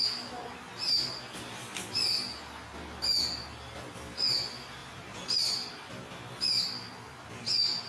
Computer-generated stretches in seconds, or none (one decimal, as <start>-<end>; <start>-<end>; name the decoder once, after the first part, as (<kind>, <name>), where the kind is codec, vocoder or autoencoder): 4.8-5.7 (vocoder, BigVGAN v2)